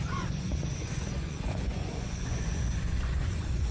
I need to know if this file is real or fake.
fake